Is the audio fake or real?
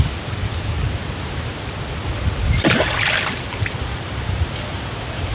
real